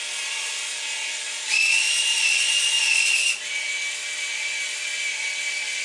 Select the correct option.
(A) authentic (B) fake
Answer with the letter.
A